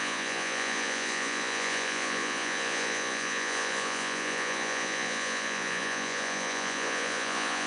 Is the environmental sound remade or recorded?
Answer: remade